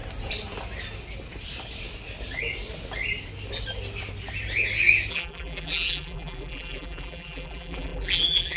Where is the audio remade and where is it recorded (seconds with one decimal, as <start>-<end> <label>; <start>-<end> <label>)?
0.0-5.1 recorded; 5.1-8.6 remade